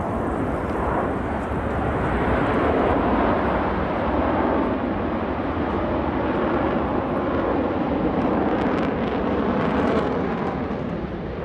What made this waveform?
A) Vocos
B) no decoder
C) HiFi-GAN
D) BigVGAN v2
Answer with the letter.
B